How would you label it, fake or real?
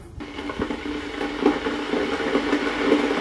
fake